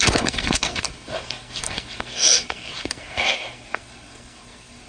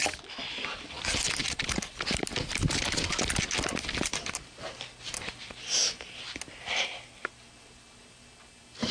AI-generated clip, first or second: first